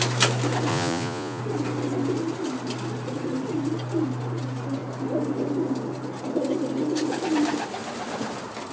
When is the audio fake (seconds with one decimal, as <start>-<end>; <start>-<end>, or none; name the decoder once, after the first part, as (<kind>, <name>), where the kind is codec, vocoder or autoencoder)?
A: 0.7-1.4 (vocoder, Vocos)